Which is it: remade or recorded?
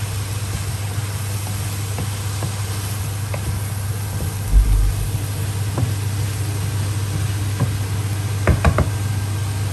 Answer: recorded